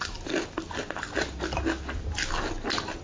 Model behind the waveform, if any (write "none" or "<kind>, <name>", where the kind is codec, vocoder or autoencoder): none